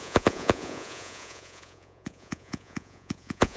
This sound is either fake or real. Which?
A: fake